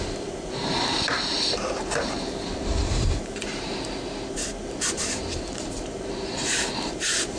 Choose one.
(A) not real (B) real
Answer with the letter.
A